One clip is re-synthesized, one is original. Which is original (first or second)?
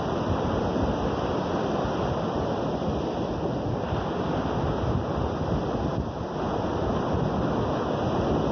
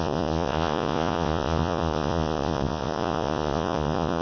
first